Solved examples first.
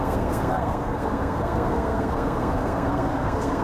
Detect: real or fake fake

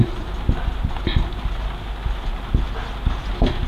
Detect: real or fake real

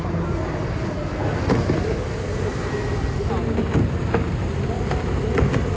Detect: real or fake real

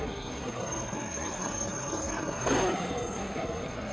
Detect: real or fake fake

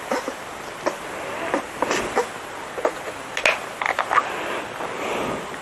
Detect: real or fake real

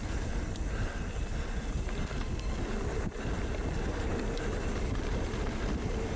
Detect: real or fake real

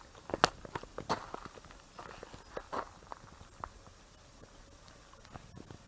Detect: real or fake real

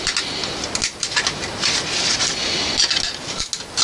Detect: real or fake real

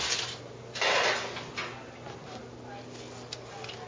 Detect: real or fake real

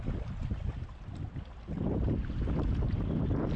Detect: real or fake real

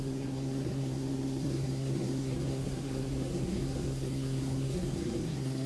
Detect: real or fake fake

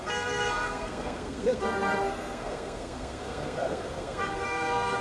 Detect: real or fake fake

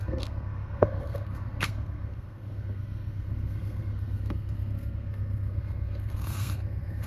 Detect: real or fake fake